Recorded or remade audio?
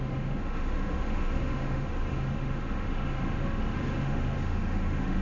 remade